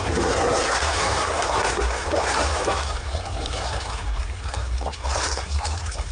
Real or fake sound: fake